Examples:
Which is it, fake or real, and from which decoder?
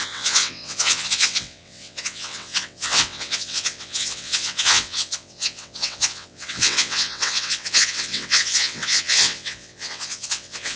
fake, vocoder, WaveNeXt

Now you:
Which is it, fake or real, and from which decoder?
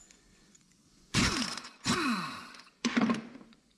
fake, vocoder, Vocos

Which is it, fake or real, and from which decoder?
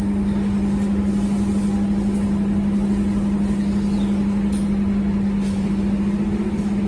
real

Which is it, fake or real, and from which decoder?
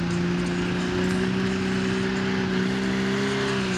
real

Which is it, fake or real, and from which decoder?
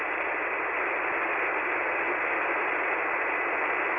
real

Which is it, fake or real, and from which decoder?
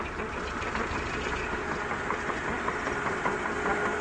real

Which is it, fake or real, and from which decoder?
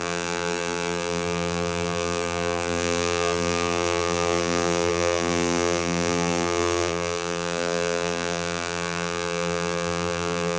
fake, vocoder, BigVGAN v2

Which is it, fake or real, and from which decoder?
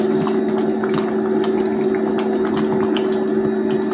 real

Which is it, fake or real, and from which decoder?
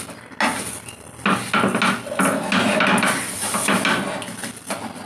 real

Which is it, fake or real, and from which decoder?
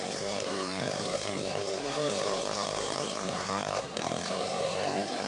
fake, codec, SNAC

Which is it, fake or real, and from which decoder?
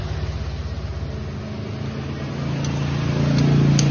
real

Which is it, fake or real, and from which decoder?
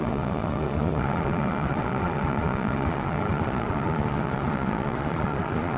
fake, vocoder, Vocos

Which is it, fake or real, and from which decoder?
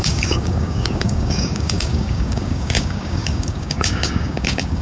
fake, codec, DAC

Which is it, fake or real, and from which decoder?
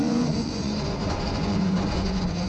fake, vocoder, Vocos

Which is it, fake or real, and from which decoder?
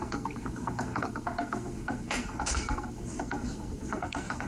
fake, codec, SNAC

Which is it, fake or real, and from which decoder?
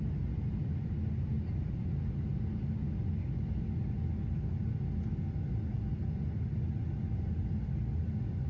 real